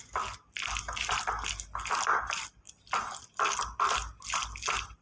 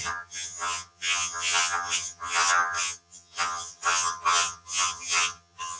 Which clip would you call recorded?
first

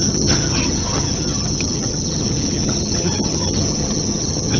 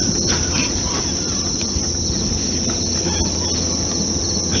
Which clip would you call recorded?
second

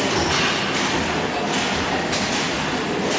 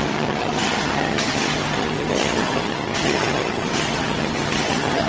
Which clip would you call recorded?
first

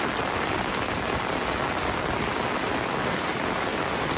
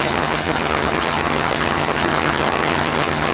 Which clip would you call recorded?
first